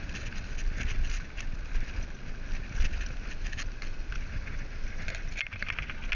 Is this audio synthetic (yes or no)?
no